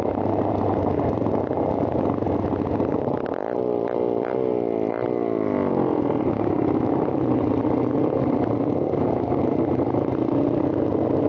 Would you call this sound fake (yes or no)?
no